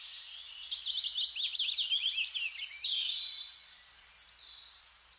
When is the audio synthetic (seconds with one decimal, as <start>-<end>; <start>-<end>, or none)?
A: none